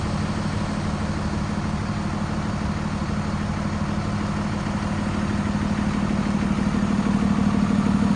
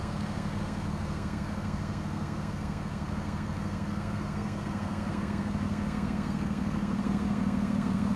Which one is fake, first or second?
second